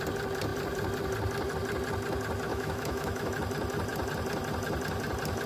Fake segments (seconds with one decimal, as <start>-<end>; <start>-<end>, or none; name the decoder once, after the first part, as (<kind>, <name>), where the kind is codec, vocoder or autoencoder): 2.5-3.3 (autoencoder, DAC-VAE)